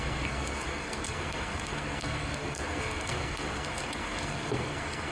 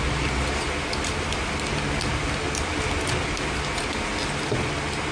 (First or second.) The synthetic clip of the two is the first